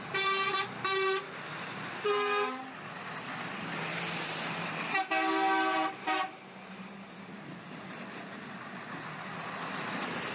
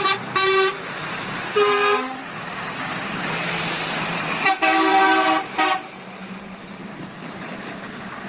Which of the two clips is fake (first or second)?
second